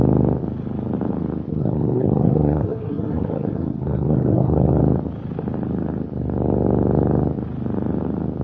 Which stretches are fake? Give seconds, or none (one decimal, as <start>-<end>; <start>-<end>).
1.5-4.8